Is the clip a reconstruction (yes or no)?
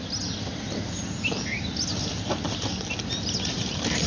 no